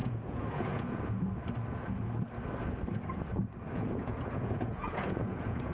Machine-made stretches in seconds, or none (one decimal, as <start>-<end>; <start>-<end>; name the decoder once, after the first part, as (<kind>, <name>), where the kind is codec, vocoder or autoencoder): 0.0-1.4 (vocoder, Vocos); 3.7-5.7